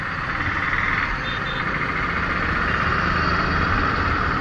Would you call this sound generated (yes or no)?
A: no